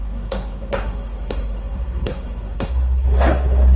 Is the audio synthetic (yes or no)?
yes